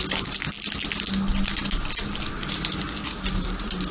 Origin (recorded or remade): recorded